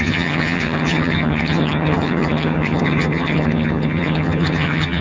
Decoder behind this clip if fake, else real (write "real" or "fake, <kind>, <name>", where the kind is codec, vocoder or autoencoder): fake, vocoder, HiFi-GAN